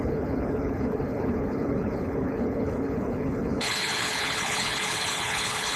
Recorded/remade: remade